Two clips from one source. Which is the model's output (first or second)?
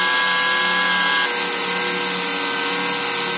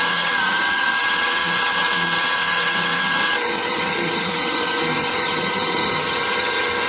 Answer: second